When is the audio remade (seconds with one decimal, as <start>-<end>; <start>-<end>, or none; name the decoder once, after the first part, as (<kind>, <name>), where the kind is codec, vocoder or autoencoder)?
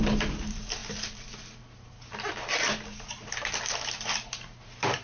none